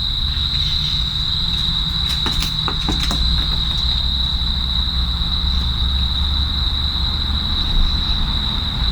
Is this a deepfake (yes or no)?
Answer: no